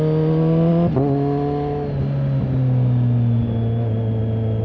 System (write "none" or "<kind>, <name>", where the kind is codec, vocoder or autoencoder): none